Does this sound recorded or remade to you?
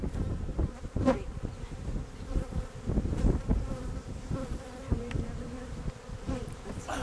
remade